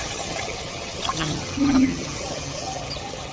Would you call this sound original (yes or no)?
no